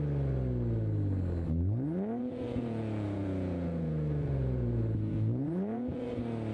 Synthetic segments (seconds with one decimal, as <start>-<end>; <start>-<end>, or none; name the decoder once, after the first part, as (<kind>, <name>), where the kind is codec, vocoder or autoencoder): 2.2-6.1 (vocoder, Vocos)